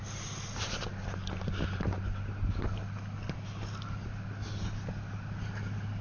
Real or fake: real